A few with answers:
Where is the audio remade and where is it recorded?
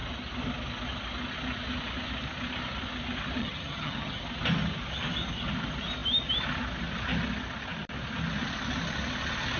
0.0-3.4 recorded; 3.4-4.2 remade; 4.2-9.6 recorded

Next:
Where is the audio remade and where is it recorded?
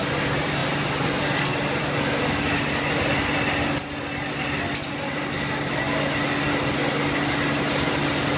0.0-8.4 recorded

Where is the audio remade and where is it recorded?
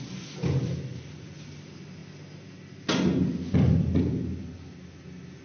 0.0-5.4 recorded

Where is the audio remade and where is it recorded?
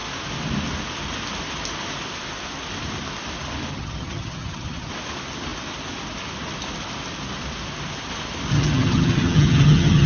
0.0-3.7 recorded; 3.7-4.9 remade; 4.9-8.5 recorded; 8.5-10.1 remade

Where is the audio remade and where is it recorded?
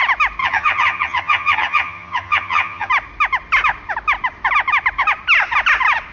0.0-0.4 recorded; 0.4-2.9 remade; 2.9-6.1 recorded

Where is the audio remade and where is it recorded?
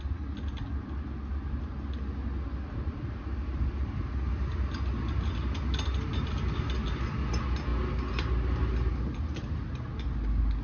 0.0-10.6 recorded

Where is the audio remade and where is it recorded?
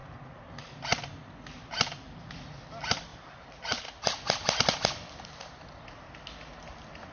0.0-7.1 recorded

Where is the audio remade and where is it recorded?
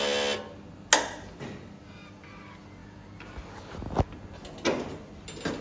0.0-5.6 recorded